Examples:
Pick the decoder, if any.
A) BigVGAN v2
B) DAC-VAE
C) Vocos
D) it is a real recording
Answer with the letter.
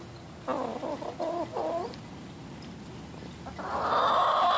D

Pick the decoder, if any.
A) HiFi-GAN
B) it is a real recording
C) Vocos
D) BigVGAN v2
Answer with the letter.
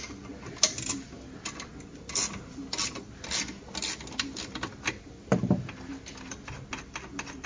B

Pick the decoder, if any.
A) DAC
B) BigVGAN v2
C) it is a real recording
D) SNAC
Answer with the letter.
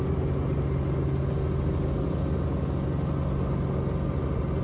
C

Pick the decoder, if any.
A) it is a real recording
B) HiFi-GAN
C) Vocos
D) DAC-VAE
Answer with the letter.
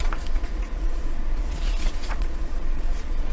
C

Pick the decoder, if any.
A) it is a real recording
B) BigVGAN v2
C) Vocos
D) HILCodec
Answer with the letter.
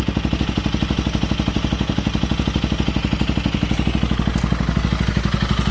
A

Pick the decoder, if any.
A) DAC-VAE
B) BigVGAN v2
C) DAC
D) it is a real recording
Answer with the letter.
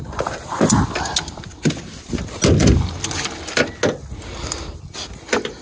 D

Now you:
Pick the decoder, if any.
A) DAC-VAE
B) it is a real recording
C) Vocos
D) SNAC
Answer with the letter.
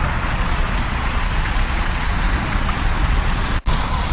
C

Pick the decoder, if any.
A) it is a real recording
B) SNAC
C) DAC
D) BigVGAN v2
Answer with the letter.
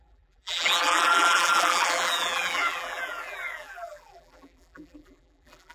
D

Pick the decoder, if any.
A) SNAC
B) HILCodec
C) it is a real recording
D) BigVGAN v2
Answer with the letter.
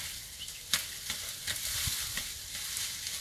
C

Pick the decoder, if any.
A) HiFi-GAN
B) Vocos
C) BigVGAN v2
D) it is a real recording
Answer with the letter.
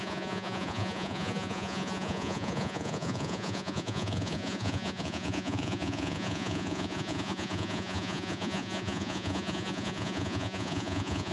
B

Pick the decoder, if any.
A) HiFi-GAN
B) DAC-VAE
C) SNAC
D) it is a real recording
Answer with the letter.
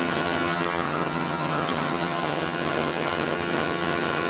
A